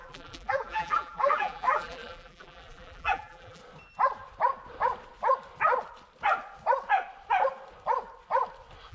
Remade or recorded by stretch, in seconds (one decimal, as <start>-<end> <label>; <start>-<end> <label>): 0.0-3.6 remade; 3.6-8.9 recorded